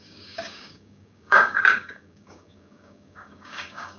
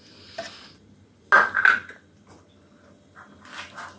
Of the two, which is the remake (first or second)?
first